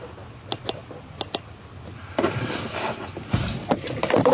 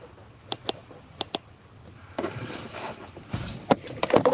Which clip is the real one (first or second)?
first